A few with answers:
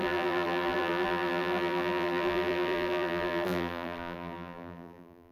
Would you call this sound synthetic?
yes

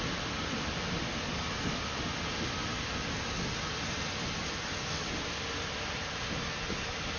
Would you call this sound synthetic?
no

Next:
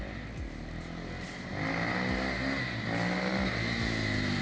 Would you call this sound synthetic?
no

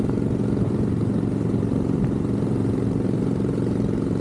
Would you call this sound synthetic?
yes